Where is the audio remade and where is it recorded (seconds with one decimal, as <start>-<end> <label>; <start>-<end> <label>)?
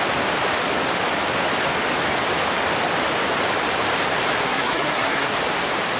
0.0-4.4 recorded; 4.4-5.3 remade; 5.3-6.0 recorded